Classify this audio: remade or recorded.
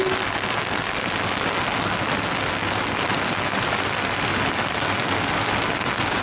recorded